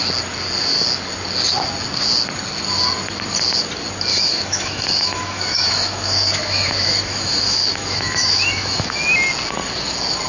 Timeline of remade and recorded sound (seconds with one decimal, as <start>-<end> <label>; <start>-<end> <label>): 0.0-4.1 recorded; 4.1-9.0 remade; 9.0-10.3 recorded